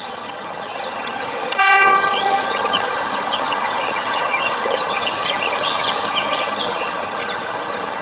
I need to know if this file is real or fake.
fake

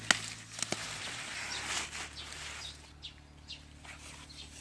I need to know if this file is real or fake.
real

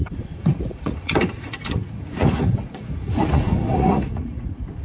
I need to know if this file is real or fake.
fake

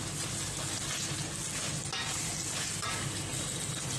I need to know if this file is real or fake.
real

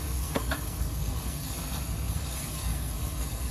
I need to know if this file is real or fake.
fake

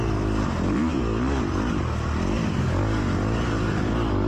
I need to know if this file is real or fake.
real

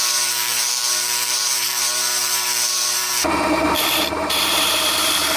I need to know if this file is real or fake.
fake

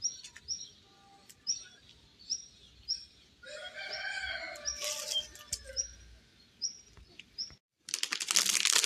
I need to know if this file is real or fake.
real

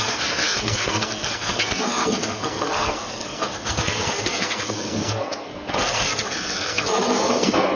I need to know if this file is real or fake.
fake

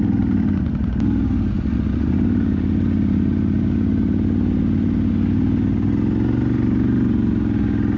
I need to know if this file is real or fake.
real